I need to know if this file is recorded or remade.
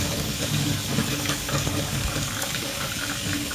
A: remade